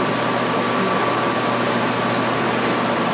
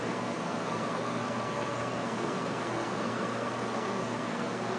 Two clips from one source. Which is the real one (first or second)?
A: first